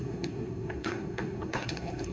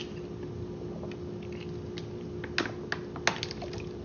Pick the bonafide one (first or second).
second